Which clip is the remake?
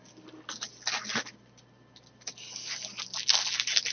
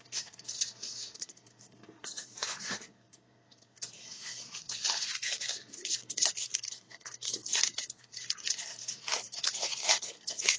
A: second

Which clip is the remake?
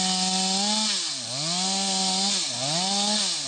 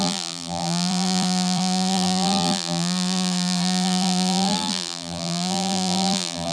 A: second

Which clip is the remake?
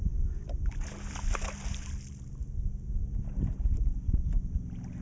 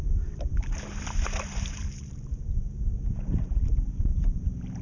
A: second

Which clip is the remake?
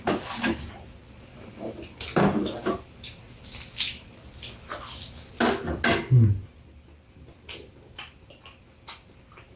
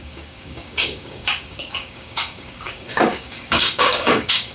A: second